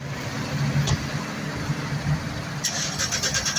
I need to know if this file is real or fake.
real